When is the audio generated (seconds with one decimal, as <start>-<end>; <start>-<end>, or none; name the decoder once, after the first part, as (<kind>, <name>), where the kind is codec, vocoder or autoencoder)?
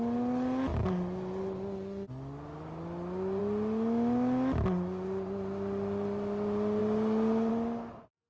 none